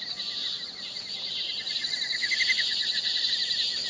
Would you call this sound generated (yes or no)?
no